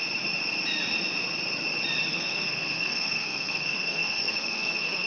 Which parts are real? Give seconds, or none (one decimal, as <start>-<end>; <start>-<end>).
0.0-2.1